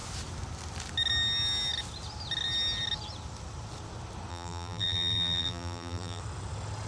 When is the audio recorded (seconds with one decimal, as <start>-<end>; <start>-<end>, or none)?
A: 0.0-4.3; 6.2-6.9